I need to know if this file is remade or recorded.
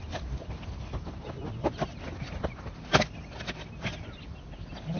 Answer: recorded